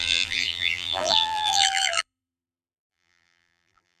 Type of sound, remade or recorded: remade